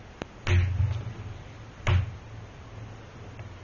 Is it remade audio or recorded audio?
recorded